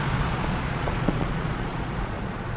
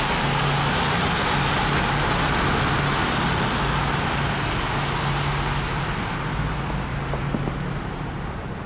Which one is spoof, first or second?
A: first